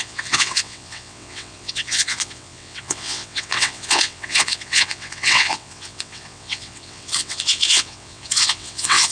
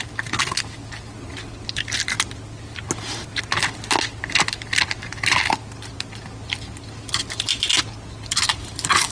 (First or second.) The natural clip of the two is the second